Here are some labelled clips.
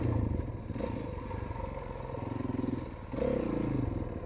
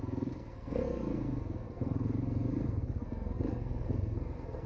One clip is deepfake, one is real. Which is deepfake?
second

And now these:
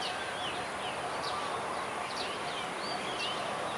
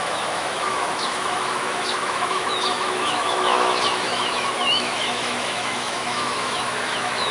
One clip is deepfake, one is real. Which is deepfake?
second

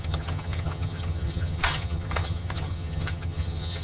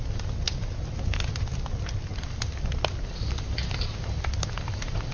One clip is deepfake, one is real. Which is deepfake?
first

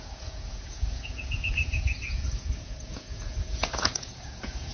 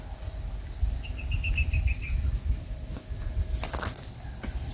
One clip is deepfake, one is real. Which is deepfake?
first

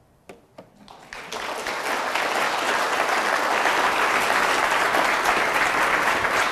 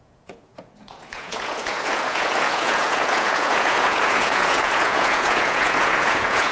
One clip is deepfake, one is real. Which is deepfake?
second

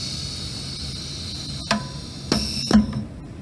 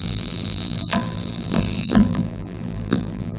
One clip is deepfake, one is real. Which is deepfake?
second